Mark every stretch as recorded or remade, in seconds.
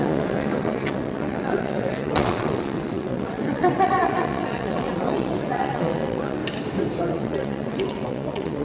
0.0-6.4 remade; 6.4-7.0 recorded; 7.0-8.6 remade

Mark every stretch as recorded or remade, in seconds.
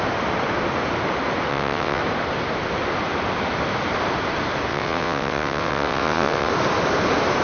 0.0-1.5 recorded; 1.5-2.0 remade; 2.0-4.7 recorded; 4.7-6.5 remade; 6.5-7.4 recorded